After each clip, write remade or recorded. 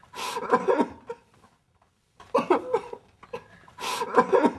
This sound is recorded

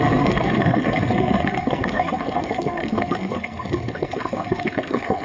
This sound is remade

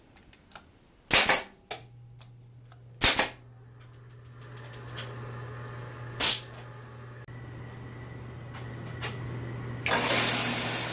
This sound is recorded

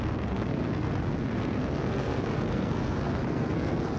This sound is remade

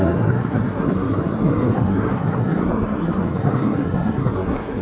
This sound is remade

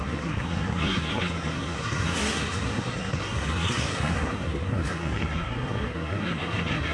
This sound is remade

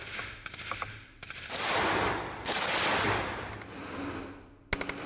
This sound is recorded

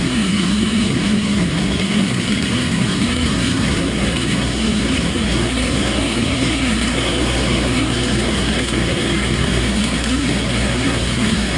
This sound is remade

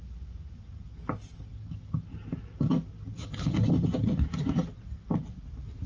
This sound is recorded